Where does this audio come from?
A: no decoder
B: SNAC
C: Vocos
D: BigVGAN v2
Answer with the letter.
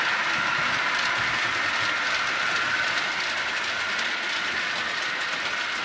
A